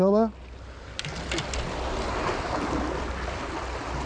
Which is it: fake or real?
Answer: real